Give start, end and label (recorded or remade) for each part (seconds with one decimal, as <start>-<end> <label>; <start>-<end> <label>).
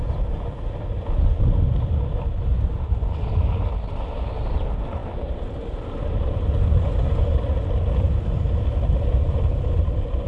0.0-10.3 recorded